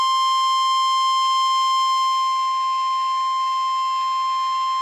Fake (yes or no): no